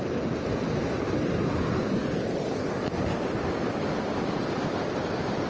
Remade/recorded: recorded